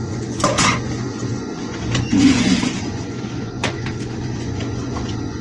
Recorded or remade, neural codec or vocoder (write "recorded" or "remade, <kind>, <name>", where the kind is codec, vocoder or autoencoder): remade, vocoder, Vocos